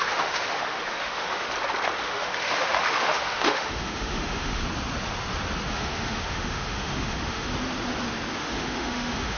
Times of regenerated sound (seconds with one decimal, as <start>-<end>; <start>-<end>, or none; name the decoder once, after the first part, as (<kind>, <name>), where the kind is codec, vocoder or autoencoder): 0.0-1.5 (autoencoder, DAC-VAE); 2.0-4.6; 5.7-7.5; 8.4-9.4